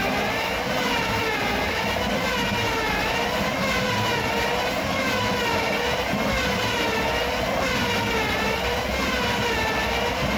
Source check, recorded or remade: recorded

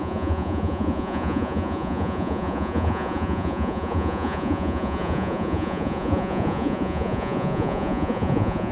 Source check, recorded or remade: remade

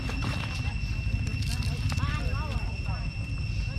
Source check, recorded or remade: recorded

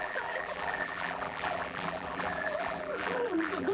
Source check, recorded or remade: remade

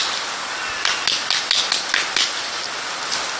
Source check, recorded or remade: recorded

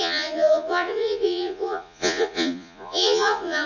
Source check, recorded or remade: remade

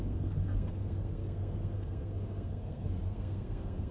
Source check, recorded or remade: remade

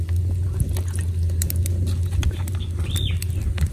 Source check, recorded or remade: recorded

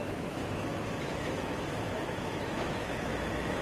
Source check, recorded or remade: remade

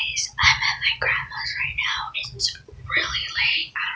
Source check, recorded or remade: recorded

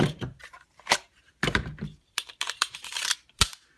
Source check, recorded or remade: remade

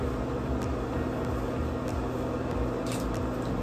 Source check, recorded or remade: recorded